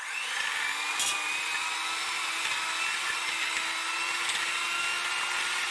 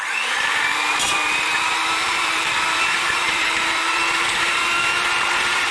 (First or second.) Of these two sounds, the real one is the first